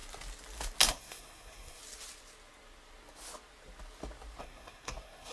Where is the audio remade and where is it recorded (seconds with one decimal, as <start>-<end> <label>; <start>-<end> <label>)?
0.0-0.9 recorded; 0.9-1.8 remade; 1.8-4.4 recorded; 4.4-5.3 remade